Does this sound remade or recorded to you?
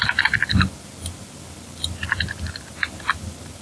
recorded